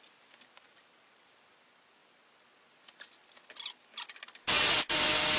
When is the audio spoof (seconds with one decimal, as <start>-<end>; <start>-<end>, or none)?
none